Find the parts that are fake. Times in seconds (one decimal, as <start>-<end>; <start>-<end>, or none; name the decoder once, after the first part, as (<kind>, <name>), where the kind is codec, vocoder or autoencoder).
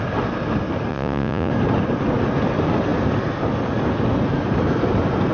0.9-1.5 (vocoder, Vocos)